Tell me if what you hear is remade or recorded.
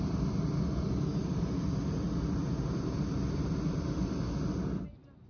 recorded